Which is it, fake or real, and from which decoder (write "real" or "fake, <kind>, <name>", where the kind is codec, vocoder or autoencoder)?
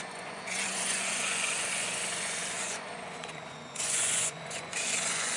fake, vocoder, Vocos